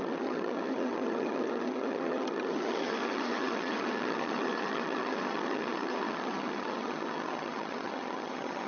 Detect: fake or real fake